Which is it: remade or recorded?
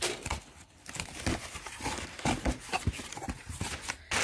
recorded